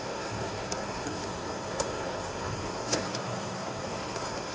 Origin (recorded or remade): remade